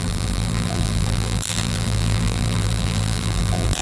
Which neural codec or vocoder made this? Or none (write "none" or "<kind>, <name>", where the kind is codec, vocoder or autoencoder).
vocoder, BigVGAN v2